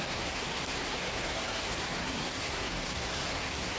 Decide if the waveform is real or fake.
fake